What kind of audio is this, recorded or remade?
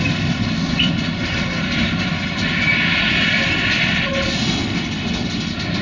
recorded